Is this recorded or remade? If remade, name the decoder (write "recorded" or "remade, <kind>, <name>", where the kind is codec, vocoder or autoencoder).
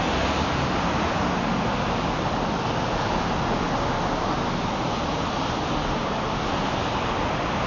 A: recorded